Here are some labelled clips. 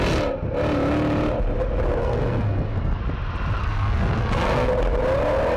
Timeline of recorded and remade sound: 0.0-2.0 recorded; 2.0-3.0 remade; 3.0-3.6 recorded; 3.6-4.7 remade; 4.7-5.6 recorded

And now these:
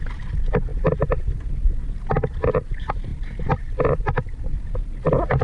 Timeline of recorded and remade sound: 0.0-5.4 recorded

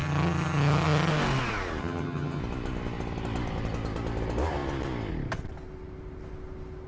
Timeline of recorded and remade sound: 0.0-1.1 remade; 1.1-1.8 recorded; 1.8-2.4 remade; 2.4-6.9 recorded

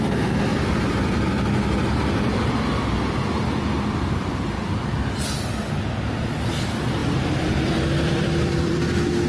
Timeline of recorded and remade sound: 0.0-0.5 recorded; 0.5-2.5 remade; 2.5-7.0 recorded; 7.0-8.8 remade; 8.8-9.3 recorded

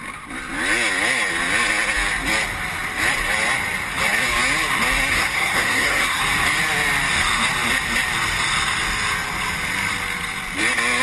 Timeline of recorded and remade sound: 0.0-5.1 recorded; 5.1-6.2 remade; 6.2-11.0 recorded

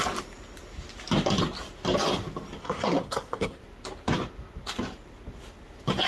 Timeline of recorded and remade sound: 0.0-2.6 recorded; 2.6-3.6 remade; 3.6-6.1 recorded